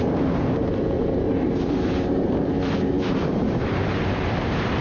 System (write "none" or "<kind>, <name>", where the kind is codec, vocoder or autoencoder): vocoder, BigVGAN v2